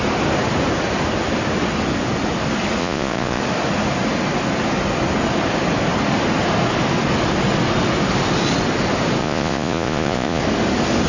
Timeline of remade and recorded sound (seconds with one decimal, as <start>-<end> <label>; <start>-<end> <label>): 0.0-2.8 recorded; 2.8-3.4 remade; 3.4-9.2 recorded; 9.2-10.4 remade; 10.4-11.1 recorded